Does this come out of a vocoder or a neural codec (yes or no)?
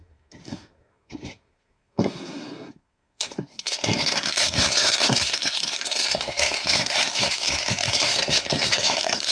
yes